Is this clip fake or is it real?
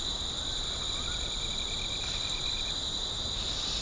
real